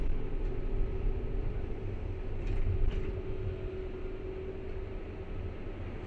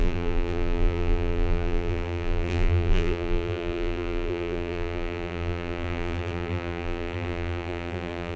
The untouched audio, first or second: first